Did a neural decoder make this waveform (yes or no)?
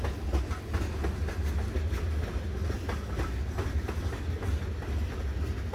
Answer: no